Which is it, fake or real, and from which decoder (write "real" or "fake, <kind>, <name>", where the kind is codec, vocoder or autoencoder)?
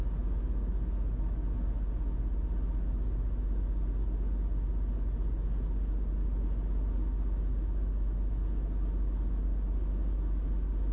real